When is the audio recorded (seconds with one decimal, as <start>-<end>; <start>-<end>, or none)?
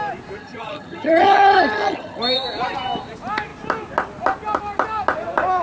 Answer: 0.0-0.4; 2.2-5.6